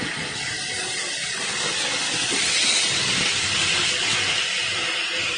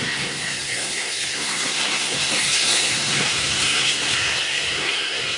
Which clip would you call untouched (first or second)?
first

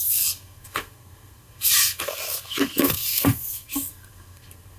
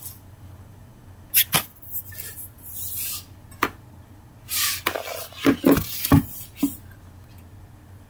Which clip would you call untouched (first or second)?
second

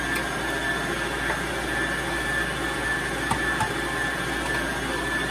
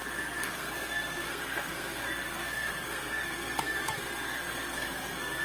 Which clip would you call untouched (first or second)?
first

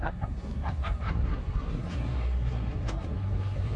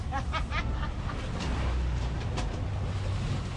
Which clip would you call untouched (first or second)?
second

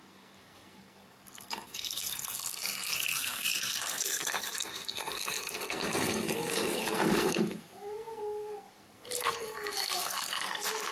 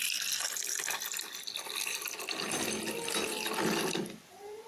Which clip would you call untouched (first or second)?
second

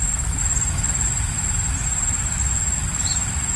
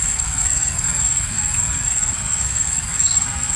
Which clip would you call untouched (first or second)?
first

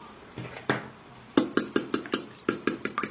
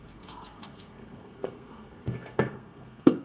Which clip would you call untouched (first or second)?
first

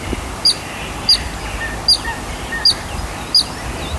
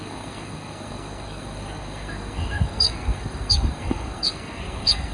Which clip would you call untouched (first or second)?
first